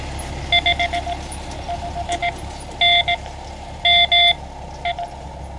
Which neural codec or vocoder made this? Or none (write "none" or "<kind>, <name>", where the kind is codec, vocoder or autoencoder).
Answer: none